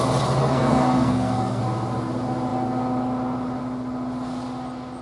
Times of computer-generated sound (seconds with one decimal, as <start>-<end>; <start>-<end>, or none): 0.4-1.6